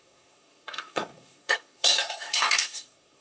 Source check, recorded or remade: remade